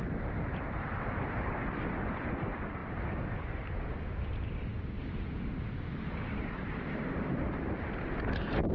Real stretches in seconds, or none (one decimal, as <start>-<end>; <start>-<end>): 2.8-3.4